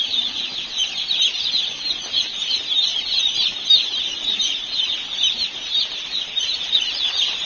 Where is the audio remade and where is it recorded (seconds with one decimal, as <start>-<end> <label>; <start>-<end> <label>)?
0.0-2.9 recorded; 2.9-4.6 remade; 4.6-7.5 recorded